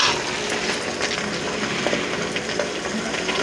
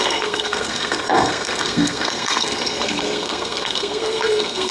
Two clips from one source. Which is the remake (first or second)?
second